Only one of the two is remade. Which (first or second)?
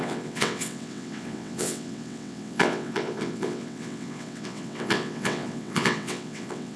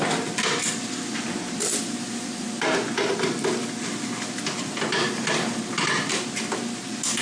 first